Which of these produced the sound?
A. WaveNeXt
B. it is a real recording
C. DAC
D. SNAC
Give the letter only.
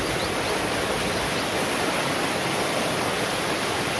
B